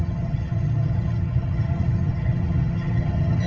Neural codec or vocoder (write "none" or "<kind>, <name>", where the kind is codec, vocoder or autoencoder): vocoder, HiFi-GAN